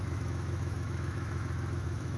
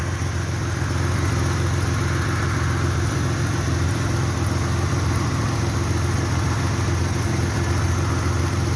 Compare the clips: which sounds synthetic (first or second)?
first